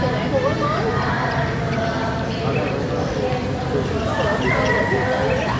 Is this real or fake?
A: real